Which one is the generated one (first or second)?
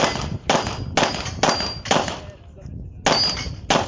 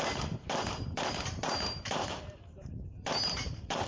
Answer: second